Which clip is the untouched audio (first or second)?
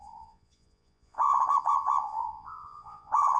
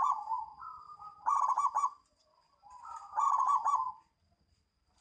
second